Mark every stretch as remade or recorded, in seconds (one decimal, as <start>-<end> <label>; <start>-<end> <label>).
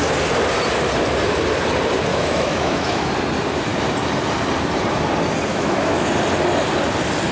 0.0-2.1 recorded; 2.1-3.1 remade; 3.1-5.5 recorded; 5.5-6.1 remade; 6.1-7.3 recorded